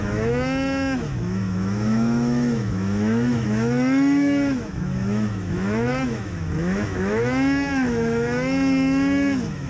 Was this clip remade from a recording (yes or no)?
yes